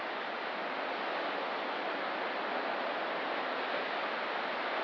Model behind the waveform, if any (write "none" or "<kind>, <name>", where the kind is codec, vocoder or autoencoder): none